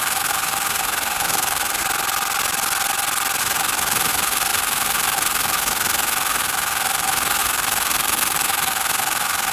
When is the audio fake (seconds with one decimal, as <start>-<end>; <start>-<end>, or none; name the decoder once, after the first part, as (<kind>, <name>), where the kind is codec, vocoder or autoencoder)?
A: 0.0-1.8 (autoencoder, DAC-VAE); 3.4-9.5